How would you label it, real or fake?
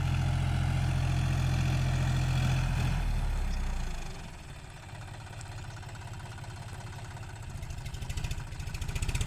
real